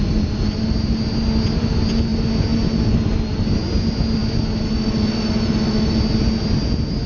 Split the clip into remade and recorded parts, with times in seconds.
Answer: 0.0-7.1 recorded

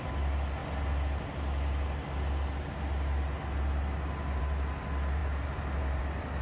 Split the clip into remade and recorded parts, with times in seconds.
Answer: 0.0-6.4 recorded